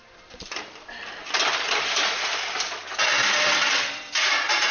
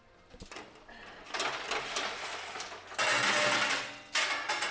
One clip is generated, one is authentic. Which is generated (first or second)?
first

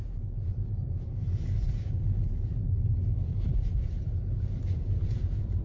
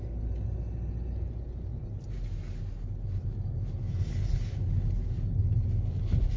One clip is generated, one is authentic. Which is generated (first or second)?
first